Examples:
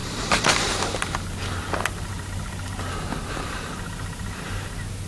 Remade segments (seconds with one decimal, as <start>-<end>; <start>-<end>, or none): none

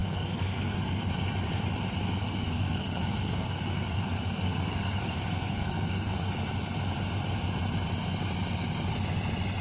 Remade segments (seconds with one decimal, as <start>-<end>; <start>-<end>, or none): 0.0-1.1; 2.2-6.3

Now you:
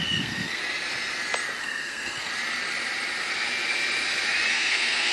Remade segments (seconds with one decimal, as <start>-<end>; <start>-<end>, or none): 0.0-0.6; 1.6-2.3; 4.5-5.1